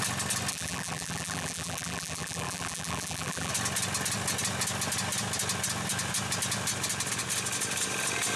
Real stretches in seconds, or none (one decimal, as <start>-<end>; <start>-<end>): 0.0-0.5; 3.5-8.4